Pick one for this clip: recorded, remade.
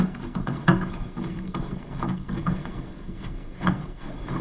remade